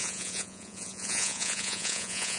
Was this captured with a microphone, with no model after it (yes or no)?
no